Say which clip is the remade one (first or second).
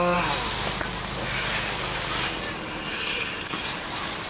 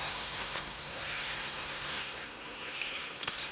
second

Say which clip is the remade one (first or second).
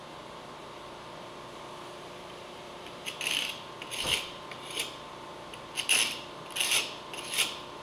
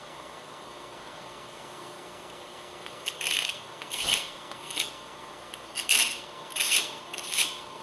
second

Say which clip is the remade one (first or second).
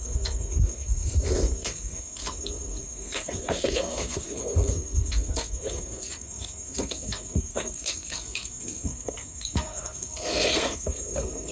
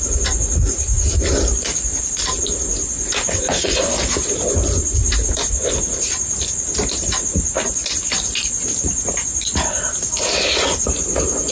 first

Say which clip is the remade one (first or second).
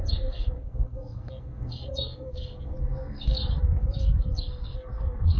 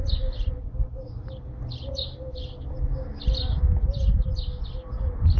first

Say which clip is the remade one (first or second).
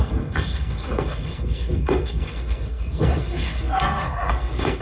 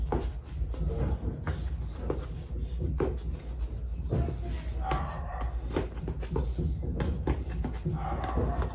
first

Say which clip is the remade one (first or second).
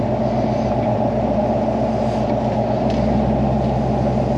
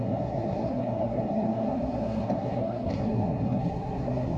second